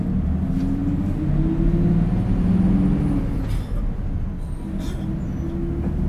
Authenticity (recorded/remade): recorded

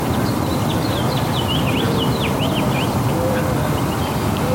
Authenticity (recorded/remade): remade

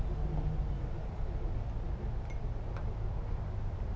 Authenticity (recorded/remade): recorded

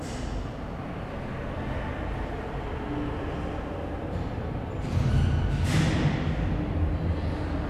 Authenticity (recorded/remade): recorded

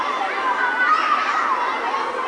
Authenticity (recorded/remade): recorded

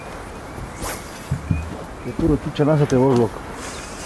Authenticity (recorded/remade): recorded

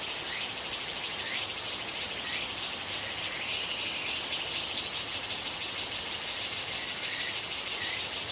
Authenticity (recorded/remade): recorded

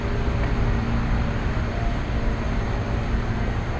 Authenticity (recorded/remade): recorded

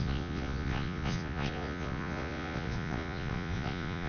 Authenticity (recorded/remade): remade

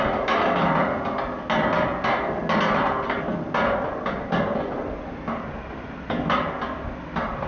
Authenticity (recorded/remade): recorded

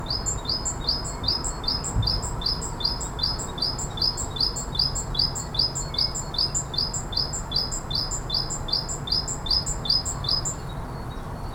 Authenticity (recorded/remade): recorded